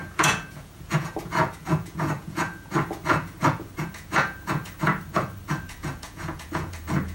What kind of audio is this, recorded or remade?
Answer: remade